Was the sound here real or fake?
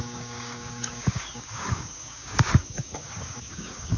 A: fake